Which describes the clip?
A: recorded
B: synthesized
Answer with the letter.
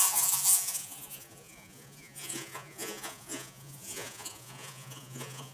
B